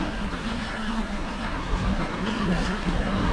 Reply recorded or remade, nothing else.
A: remade